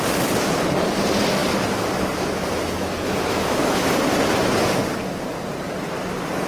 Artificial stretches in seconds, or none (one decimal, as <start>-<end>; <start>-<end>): 1.4-3.9

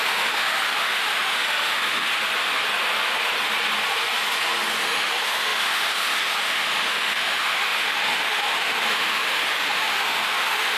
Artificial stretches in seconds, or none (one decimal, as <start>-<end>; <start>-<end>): 0.0-2.1; 4.8-10.8

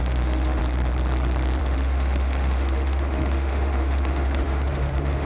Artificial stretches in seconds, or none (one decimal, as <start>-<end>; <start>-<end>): 0.0-0.6; 1.6-5.3

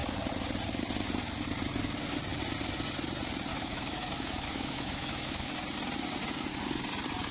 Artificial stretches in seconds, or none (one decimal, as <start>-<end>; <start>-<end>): 3.5-5.5

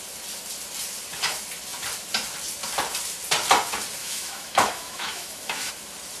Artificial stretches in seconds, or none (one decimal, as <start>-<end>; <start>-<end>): 4.0-5.7

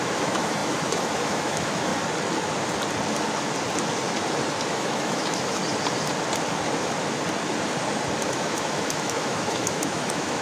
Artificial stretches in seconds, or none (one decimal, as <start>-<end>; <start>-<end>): 0.0-1.9; 4.7-5.6; 8.2-10.4